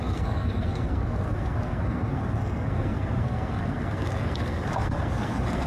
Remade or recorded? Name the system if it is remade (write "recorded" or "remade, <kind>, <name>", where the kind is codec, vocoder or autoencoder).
remade, codec, SNAC